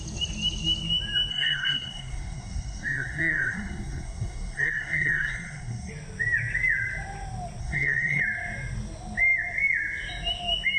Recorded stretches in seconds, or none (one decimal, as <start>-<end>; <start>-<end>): 0.0-1.3; 5.9-7.6; 8.2-10.8